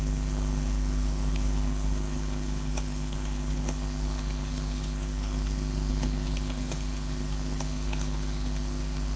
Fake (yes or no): yes